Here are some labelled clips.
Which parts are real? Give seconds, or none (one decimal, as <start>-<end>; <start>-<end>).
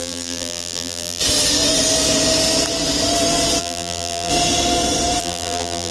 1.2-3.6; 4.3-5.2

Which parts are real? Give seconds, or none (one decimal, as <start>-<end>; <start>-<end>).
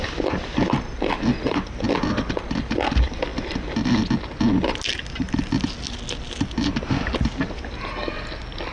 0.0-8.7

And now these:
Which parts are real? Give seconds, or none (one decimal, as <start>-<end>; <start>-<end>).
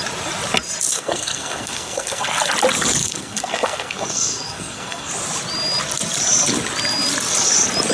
0.0-0.9; 2.5-3.0; 5.1-7.9